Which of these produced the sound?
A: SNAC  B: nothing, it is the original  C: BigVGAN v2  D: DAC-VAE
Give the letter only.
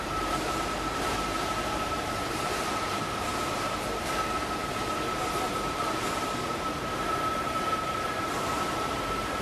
C